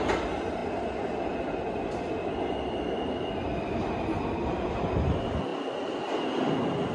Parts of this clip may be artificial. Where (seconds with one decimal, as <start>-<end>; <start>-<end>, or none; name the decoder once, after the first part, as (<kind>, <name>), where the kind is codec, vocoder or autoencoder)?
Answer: none